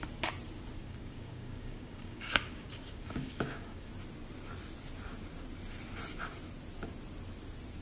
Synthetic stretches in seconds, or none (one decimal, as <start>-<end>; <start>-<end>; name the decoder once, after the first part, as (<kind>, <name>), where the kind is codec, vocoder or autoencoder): 0.8-3.9 (codec, DAC)

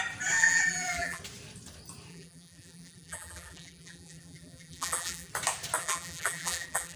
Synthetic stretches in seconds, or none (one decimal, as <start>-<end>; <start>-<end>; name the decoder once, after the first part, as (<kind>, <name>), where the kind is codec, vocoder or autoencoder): 0.4-1.2 (vocoder, BigVGAN v2); 2.1-5.3; 5.8-7.0